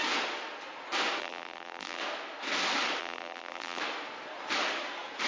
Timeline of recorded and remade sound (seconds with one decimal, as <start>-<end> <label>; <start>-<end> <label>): 0.0-1.2 recorded; 1.2-2.0 remade; 2.0-3.0 recorded; 3.0-3.8 remade; 3.8-5.3 recorded